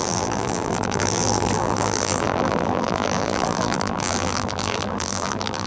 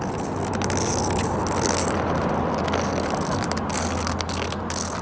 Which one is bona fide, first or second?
second